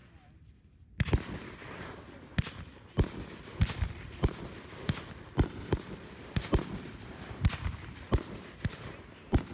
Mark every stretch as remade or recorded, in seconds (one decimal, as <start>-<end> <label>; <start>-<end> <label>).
0.0-9.5 recorded